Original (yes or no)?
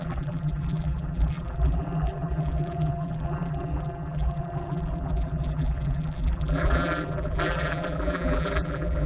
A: no